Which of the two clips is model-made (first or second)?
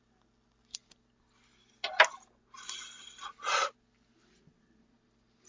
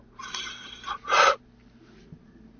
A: second